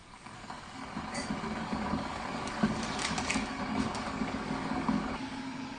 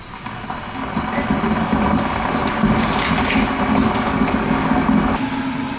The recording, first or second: second